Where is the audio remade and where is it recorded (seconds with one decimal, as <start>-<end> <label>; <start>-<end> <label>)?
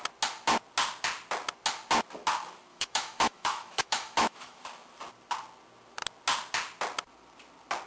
0.0-2.7 recorded; 2.7-4.6 remade; 4.6-7.9 recorded